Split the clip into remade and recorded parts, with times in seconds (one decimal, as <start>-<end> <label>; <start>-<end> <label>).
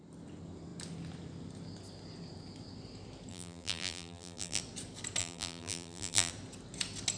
0.0-3.3 recorded; 3.3-4.6 remade; 4.6-5.2 recorded; 5.2-6.3 remade; 6.3-7.2 recorded